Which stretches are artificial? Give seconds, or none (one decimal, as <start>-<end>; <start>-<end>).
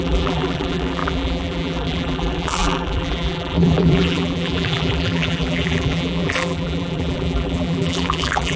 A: 0.0-8.6